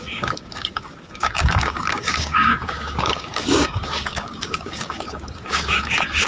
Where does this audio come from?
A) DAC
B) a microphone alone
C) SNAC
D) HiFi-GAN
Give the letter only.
A